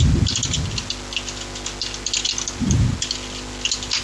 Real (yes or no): yes